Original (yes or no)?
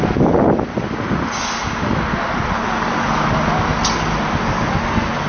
yes